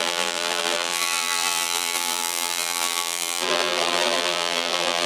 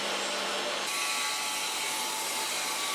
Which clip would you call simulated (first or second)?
first